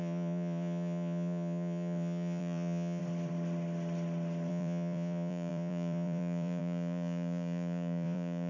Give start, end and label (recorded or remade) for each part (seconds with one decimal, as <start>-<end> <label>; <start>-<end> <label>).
0.0-3.0 remade; 3.0-4.5 recorded; 4.5-8.5 remade